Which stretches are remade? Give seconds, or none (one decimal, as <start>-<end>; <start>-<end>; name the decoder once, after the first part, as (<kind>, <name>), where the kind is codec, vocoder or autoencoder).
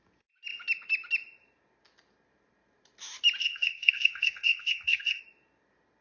3.4-5.2 (codec, ZipCodec)